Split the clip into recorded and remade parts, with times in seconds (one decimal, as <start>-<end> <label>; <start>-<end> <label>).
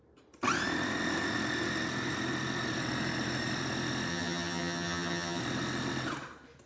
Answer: 0.0-4.1 recorded; 4.1-5.4 remade; 5.4-6.7 recorded